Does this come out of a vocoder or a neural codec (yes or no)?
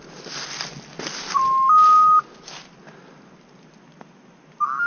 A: no